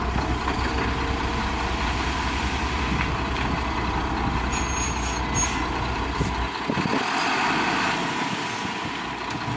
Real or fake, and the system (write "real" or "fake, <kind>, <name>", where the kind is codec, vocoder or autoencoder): real